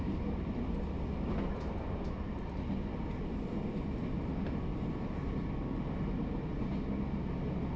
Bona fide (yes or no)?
yes